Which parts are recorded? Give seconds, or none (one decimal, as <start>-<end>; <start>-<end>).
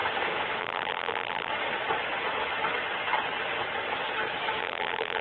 0.0-0.6; 1.5-4.6